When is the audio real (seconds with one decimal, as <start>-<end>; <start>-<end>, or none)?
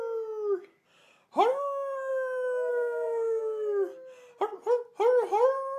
0.0-1.5; 2.1-2.7; 3.4-5.8